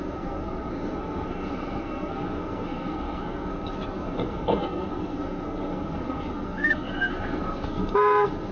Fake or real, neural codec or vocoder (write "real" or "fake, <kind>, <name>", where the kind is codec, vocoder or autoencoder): fake, codec, SNAC